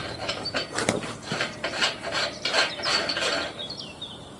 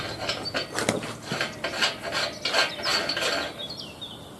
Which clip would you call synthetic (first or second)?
first